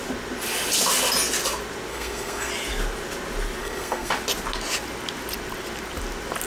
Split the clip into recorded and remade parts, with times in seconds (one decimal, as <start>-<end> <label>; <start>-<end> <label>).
0.0-1.9 recorded; 1.9-2.5 remade; 2.5-3.6 recorded; 3.6-4.1 remade; 4.1-6.5 recorded